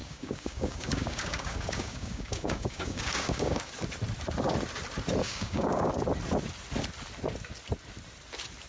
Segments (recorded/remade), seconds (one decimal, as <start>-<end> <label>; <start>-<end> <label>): 0.0-3.7 remade; 3.7-5.2 recorded; 5.2-5.9 remade; 5.9-8.7 recorded